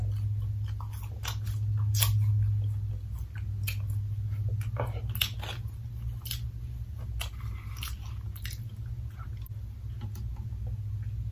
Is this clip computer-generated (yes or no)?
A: no